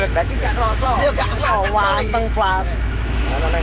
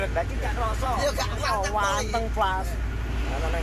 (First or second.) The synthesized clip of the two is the first